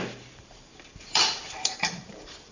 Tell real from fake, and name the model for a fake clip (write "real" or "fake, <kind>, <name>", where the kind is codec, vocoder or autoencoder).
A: fake, vocoder, BigVGAN v2